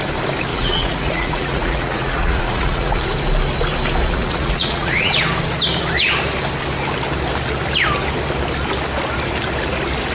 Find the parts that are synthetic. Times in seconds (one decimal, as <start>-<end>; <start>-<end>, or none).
0.5-3.0; 4.0-5.1